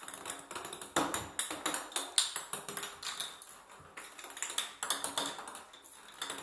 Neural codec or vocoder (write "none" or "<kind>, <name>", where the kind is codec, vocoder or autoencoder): none